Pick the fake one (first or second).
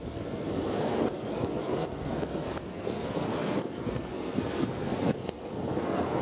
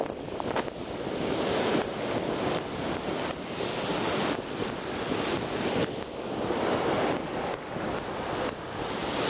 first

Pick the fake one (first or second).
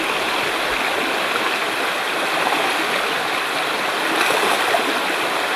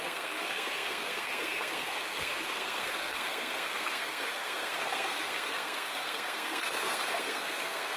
second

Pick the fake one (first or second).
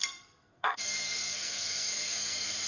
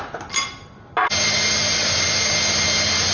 first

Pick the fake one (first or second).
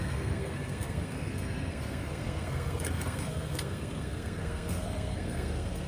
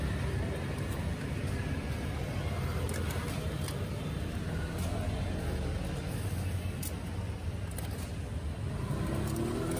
first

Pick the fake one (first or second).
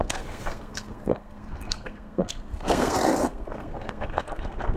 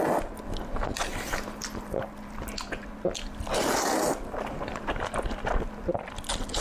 first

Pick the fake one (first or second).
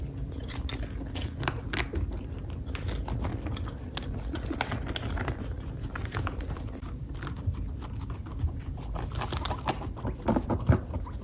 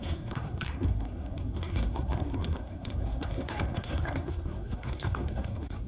second